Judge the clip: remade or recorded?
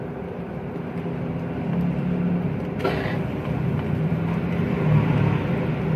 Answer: recorded